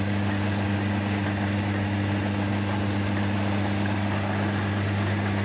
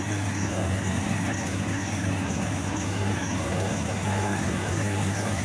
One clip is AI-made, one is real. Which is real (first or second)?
first